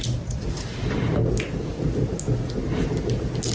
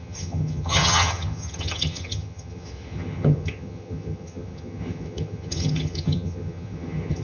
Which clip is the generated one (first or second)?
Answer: second